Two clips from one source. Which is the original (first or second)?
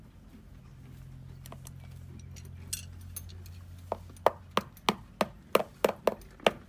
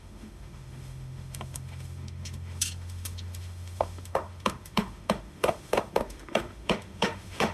first